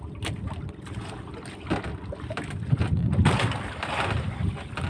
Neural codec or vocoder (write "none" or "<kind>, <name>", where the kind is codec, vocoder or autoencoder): none